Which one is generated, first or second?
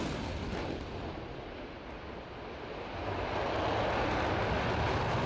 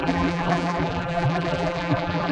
second